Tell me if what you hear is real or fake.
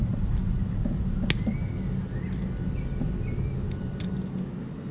real